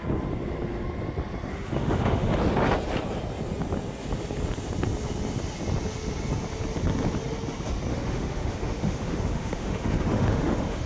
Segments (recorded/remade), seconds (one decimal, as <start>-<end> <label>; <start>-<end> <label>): 0.0-1.5 recorded; 1.5-2.4 remade; 2.4-7.9 recorded; 7.9-10.9 remade